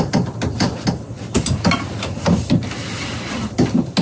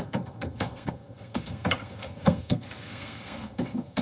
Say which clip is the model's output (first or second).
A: second